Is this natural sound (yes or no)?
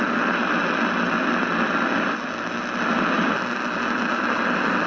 yes